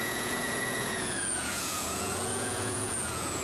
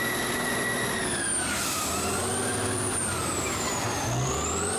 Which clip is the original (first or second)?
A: second